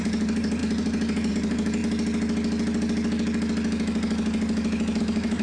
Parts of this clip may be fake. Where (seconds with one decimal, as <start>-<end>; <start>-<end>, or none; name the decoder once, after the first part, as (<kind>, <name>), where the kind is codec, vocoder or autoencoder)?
0.0-1.8 (vocoder, BigVGAN v2); 5.0-5.4